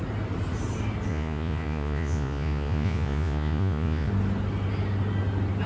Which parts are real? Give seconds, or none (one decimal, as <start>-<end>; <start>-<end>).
0.0-1.1; 4.1-5.7

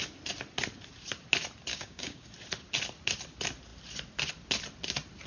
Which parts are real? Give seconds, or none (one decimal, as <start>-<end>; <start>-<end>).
0.0-1.7; 2.3-5.3